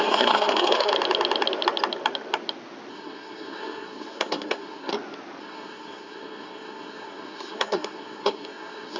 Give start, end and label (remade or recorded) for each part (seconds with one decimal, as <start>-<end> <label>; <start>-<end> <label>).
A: 0.0-0.9 remade; 0.9-2.9 recorded; 2.9-4.9 remade; 4.9-5.4 recorded; 5.4-9.0 remade